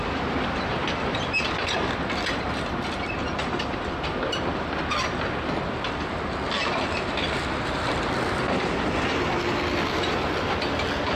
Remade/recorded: recorded